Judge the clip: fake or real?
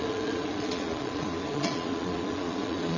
fake